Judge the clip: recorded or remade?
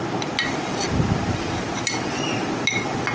recorded